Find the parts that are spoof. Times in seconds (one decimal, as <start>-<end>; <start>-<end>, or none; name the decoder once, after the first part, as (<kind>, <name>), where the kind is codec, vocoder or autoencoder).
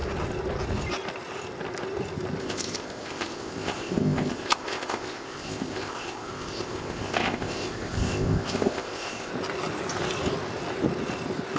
2.4-9.3 (codec, ZipCodec)